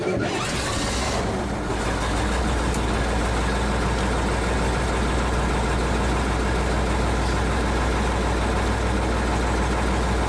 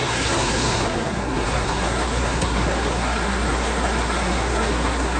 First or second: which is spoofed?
second